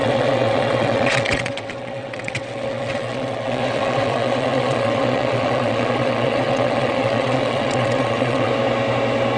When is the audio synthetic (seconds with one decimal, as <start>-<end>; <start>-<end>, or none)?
0.0-8.5